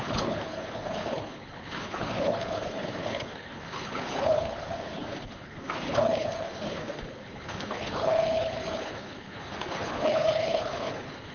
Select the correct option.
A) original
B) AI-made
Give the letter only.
B